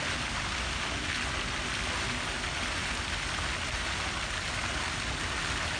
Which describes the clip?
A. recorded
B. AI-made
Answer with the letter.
A